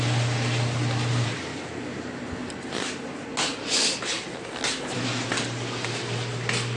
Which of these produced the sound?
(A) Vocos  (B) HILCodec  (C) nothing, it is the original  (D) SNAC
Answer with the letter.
C